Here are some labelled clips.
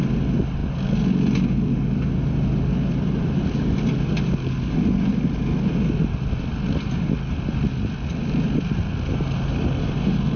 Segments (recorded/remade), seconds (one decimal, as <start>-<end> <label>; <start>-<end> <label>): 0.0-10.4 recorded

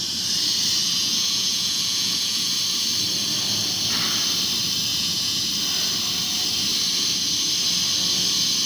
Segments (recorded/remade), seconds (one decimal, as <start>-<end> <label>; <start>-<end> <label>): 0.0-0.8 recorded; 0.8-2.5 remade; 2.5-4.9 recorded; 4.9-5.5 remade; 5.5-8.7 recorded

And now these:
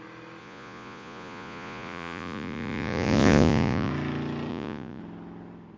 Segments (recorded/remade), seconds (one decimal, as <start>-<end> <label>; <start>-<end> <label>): 0.0-0.4 recorded; 0.4-3.9 remade; 3.9-4.5 recorded; 4.5-5.0 remade; 5.0-5.8 recorded

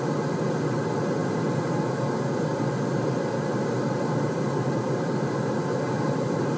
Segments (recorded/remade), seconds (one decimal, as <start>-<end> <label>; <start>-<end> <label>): 0.0-6.6 recorded

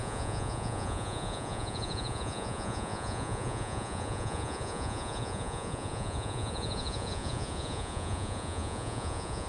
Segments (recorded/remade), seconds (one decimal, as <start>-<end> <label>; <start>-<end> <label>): 0.0-9.5 remade

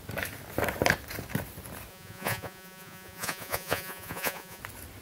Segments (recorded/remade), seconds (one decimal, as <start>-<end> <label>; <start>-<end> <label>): 0.0-1.9 recorded; 1.9-4.6 remade; 4.6-5.0 recorded